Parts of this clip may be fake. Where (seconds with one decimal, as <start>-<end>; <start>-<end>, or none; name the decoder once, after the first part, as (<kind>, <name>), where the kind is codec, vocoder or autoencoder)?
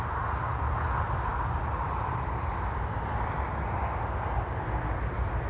none